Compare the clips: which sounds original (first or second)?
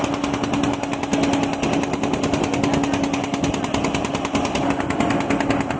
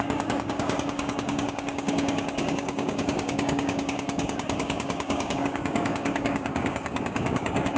first